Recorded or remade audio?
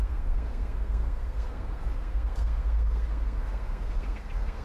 remade